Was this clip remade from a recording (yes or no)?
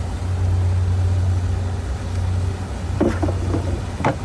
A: no